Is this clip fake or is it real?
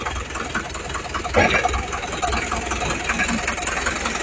real